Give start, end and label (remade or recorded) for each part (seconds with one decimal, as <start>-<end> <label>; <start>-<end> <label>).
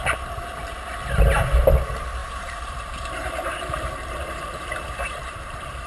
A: 0.0-2.2 recorded; 2.2-5.9 remade